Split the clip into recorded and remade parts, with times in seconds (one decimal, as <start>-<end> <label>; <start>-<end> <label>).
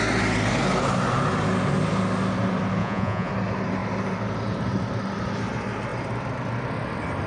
0.0-2.8 recorded; 2.8-3.3 remade; 3.3-7.3 recorded